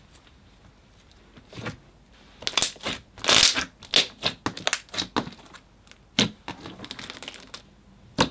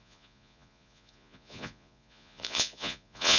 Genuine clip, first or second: first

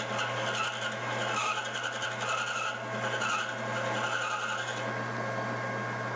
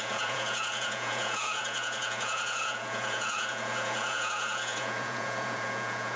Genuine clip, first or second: first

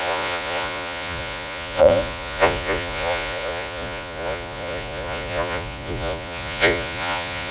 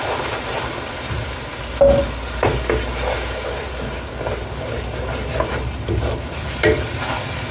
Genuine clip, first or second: second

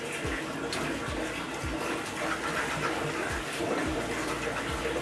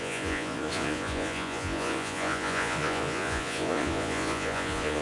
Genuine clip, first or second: first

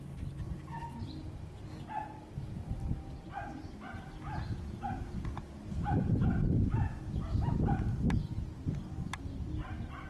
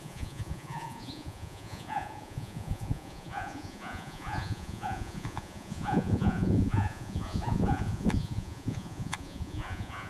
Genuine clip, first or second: first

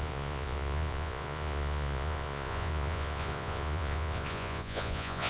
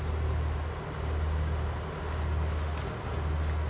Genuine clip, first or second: second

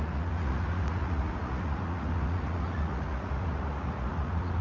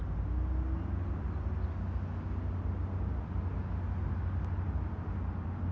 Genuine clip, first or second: second